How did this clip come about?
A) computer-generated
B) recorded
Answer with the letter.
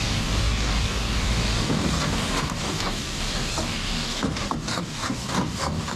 A